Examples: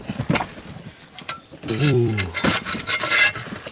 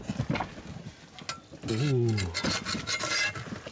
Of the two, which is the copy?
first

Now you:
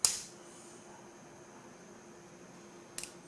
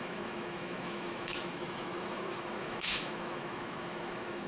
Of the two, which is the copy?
second